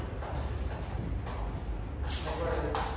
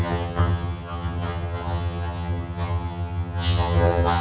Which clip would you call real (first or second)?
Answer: first